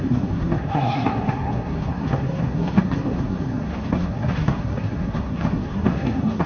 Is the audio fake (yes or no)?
yes